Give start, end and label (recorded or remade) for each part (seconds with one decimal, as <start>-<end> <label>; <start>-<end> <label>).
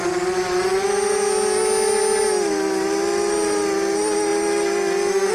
0.0-5.3 recorded